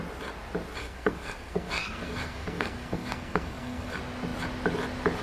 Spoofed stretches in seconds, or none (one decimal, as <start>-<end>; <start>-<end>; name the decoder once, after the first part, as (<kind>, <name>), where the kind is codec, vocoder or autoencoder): 0.8-3.9 (codec, SNAC)